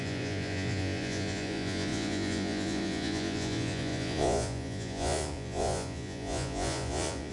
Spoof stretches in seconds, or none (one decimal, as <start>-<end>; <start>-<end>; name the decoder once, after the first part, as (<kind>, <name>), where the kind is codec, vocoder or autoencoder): 0.0-7.3 (vocoder, Vocos)